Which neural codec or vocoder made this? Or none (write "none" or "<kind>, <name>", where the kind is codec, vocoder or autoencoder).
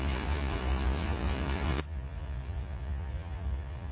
vocoder, Vocos